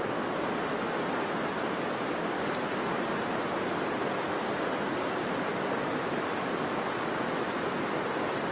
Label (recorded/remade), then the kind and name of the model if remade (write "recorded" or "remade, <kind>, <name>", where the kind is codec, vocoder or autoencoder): recorded